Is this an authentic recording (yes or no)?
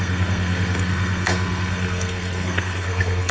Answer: no